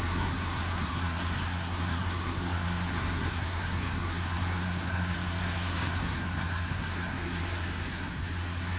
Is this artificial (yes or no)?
yes